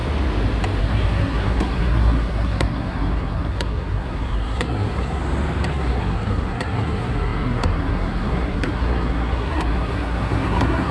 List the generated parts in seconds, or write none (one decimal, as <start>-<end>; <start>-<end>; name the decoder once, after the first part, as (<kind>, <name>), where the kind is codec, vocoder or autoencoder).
0.8-5.2 (codec, SNAC); 5.7-10.9